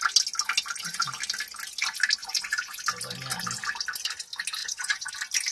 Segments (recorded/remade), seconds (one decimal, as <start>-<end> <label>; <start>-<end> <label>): 0.0-2.2 recorded; 2.2-2.8 remade; 2.8-4.6 recorded; 4.6-5.1 remade; 5.1-5.5 recorded